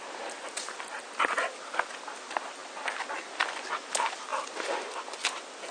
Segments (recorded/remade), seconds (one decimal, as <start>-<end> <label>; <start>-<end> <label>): 0.0-5.7 recorded